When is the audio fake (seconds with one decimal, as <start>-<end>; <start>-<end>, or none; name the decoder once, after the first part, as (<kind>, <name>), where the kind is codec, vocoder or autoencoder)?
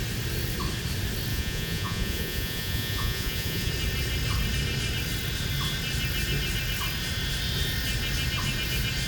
1.3-3.7 (vocoder, Vocos)